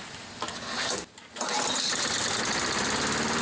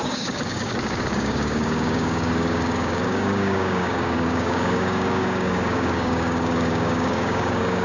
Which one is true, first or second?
first